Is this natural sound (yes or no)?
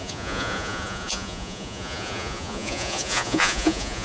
no